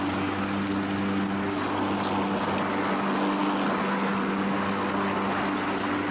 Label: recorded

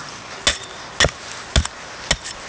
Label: recorded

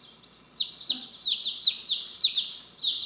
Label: recorded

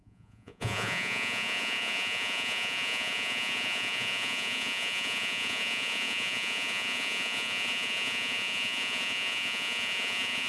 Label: remade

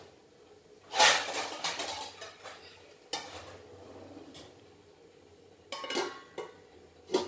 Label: recorded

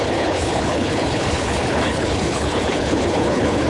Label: remade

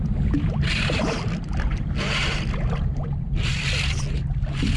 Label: recorded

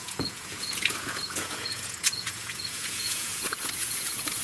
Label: remade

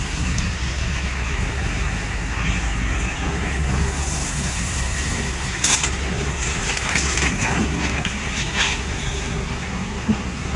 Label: remade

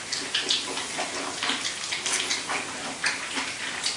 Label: recorded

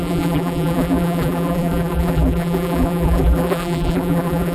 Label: remade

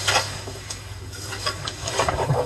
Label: remade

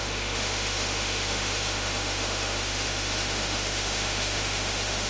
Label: remade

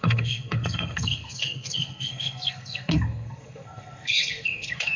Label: remade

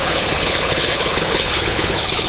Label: remade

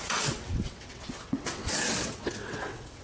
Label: remade